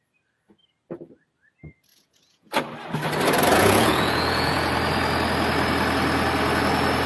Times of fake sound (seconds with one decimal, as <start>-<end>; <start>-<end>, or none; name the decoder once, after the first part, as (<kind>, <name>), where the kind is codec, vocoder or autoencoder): 1.9-2.6 (vocoder, Vocos); 3.5-4.7